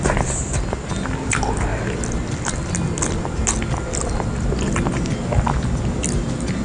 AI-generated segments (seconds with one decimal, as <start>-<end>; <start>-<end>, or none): none